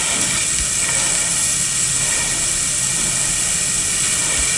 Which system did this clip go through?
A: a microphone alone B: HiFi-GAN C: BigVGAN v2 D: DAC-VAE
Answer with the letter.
A